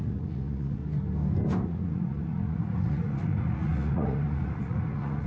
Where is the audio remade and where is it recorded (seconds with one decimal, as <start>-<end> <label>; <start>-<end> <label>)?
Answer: 0.0-0.8 remade; 0.8-1.6 recorded; 1.6-5.3 remade